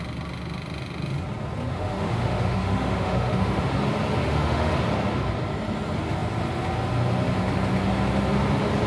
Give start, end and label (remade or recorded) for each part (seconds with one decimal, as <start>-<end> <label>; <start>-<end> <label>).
0.0-1.7 recorded; 1.7-3.6 remade; 3.6-4.2 recorded; 4.2-4.7 remade; 4.7-8.9 recorded